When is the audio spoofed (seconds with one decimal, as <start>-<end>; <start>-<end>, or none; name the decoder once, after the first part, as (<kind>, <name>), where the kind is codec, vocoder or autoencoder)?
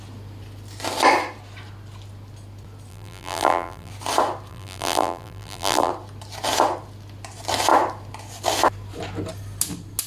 2.9-3.9 (vocoder, BigVGAN v2); 4.5-5.9